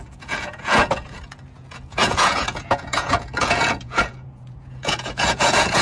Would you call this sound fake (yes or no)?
yes